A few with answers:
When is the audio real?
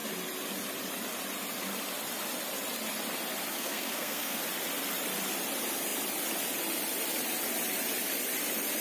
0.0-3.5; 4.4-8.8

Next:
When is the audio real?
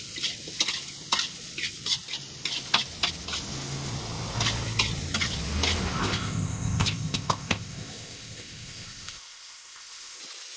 0.0-6.0; 10.2-10.6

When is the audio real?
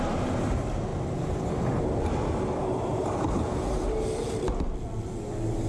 0.0-5.7